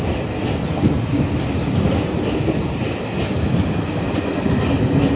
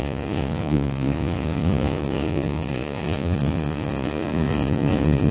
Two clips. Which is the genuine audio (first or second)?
first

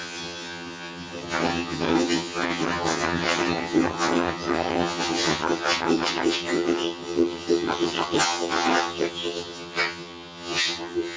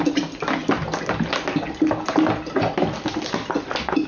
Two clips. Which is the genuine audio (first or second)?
second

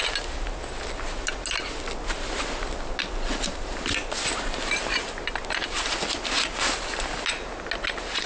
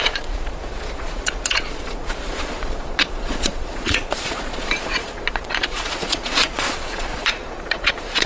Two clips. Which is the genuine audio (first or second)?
first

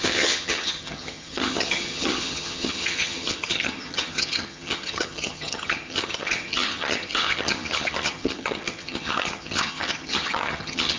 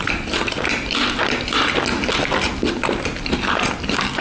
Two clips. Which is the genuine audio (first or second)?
second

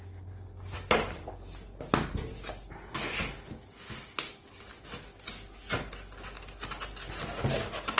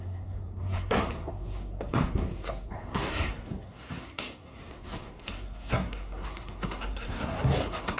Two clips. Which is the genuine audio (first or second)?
first